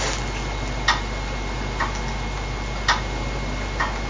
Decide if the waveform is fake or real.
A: real